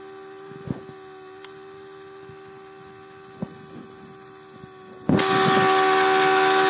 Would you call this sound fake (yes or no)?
no